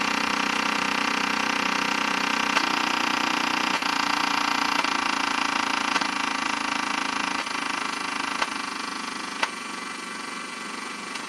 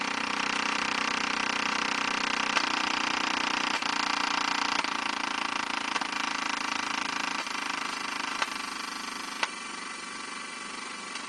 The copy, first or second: first